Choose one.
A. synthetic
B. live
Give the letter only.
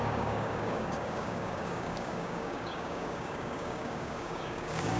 A